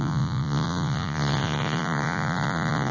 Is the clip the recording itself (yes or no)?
no